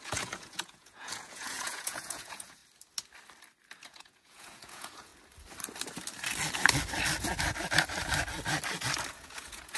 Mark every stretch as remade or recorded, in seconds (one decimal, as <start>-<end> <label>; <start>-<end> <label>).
0.0-2.6 remade; 2.6-3.8 recorded; 3.8-5.1 remade; 5.1-9.1 recorded; 9.1-9.8 remade